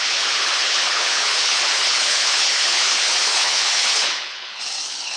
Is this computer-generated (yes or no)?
yes